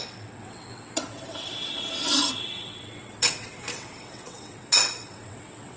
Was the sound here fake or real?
fake